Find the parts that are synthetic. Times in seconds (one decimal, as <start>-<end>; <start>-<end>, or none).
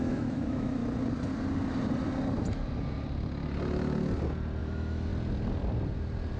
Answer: 0.0-0.8; 4.6-5.1